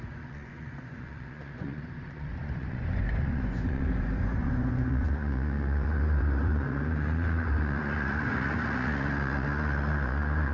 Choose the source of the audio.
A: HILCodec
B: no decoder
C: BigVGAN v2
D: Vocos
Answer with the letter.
D